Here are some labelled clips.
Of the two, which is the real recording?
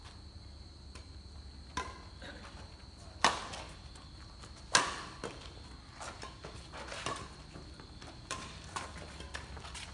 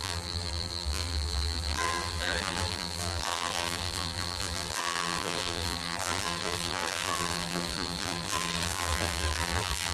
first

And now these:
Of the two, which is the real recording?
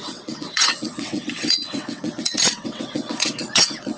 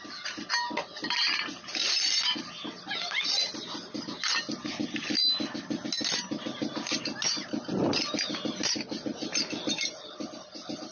second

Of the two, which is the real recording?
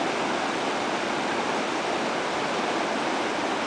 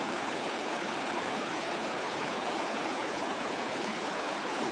first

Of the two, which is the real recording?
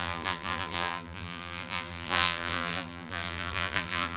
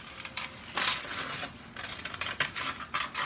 second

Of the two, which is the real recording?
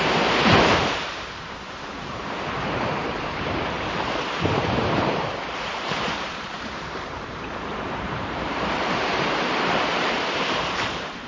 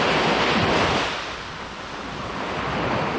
second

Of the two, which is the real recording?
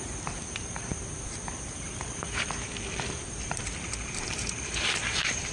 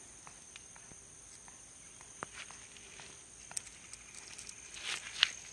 second